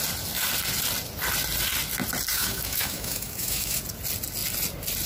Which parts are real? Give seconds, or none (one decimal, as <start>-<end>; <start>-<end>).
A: 0.0-2.3; 3.8-5.1